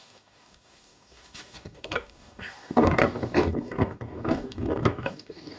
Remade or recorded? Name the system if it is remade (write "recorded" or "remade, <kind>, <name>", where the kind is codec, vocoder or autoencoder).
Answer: remade, codec, DAC